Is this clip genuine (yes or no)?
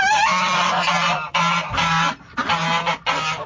yes